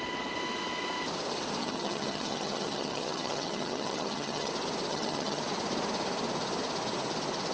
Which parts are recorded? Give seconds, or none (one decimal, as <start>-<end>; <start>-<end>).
0.0-1.6; 4.5-4.9; 5.4-7.5